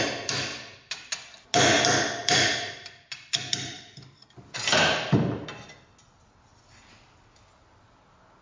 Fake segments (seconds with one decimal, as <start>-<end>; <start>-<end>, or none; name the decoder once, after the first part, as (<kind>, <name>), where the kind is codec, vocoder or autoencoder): 2.2-6.0 (vocoder, BigVGAN v2)